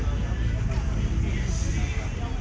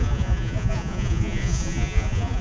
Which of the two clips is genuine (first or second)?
first